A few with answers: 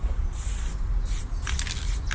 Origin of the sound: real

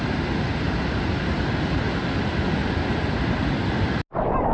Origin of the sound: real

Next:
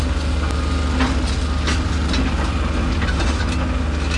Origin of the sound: real